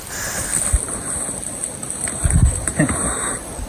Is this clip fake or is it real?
real